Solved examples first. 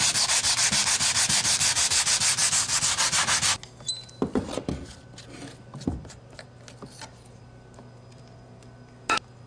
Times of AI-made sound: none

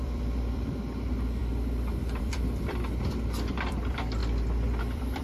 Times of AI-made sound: 0.0-4.2 (vocoder, BigVGAN v2); 4.8-5.2

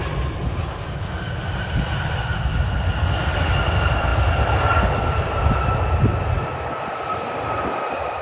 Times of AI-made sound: none

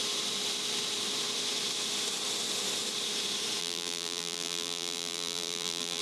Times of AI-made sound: 3.6-6.0 (vocoder, BigVGAN v2)